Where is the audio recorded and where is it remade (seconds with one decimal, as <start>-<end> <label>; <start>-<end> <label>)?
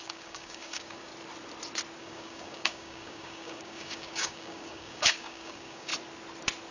0.0-1.1 remade; 1.1-2.0 recorded; 2.0-5.9 remade; 5.9-6.7 recorded